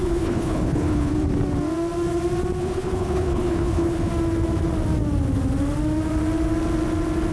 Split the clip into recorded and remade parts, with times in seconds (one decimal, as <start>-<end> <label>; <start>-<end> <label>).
0.0-1.1 remade; 1.1-2.6 recorded; 2.6-4.1 remade; 4.1-7.3 recorded